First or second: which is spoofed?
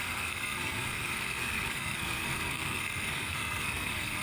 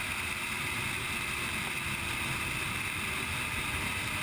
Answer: first